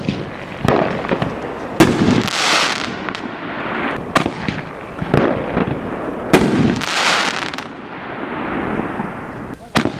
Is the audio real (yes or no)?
yes